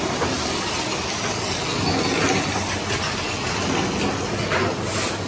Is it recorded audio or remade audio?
recorded